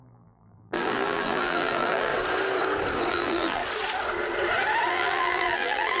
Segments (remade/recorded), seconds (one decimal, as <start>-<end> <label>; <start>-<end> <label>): 0.0-2.1 remade; 2.1-3.1 recorded; 3.1-3.6 remade; 3.6-4.9 recorded; 4.9-6.0 remade